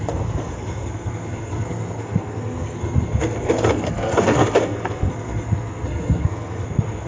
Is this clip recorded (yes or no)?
no